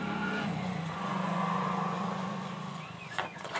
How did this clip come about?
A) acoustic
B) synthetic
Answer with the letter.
B